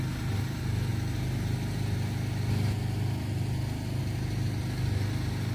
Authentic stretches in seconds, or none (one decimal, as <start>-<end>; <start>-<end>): 0.0-5.5